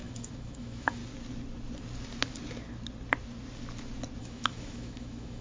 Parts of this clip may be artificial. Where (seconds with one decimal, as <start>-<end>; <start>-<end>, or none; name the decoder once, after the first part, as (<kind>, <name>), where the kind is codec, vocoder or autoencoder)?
0.0-1.0 (autoencoder, DAC-VAE); 4.2-5.4